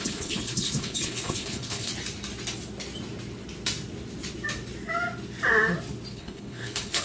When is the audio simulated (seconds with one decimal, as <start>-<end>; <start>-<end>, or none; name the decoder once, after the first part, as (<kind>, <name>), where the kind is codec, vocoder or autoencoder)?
0.0-1.9 (codec, HILCodec); 6.1-7.0